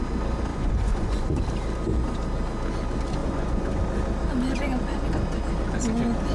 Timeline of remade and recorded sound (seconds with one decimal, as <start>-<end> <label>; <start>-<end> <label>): 0.0-0.5 recorded; 0.5-1.4 remade; 1.4-3.2 recorded; 3.2-3.8 remade; 3.8-6.3 recorded